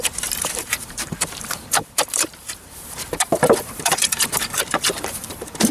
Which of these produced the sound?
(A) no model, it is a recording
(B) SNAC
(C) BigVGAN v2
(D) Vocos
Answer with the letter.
C